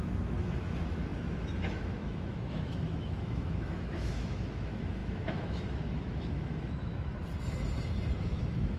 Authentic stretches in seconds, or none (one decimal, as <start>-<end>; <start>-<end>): 7.1-8.2